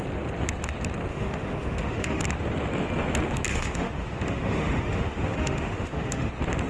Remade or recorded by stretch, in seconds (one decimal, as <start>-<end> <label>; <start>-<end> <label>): 0.0-1.1 recorded; 1.1-2.2 remade; 2.2-3.5 recorded; 3.5-6.3 remade; 6.3-6.7 recorded